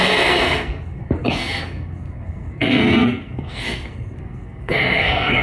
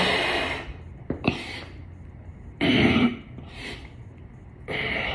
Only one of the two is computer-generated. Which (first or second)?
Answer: first